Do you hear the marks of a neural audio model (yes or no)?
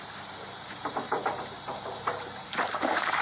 yes